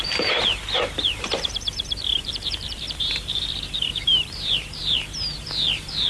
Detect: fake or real fake